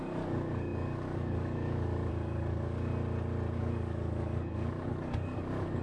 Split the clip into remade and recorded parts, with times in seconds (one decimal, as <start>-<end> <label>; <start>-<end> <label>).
0.0-2.9 remade; 2.9-3.6 recorded; 3.6-5.8 remade